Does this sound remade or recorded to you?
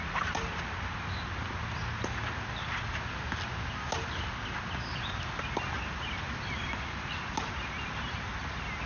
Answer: recorded